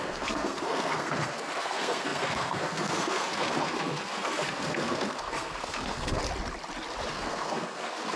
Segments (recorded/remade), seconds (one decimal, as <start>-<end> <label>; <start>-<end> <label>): 0.0-6.2 remade; 6.2-7.1 recorded; 7.1-8.2 remade